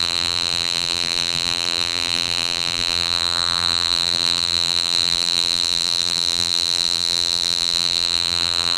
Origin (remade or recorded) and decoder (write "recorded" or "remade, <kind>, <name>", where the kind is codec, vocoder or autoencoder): remade, vocoder, BigVGAN v2